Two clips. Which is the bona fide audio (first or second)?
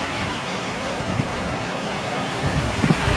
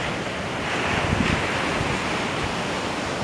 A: second